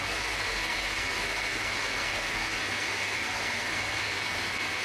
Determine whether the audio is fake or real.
fake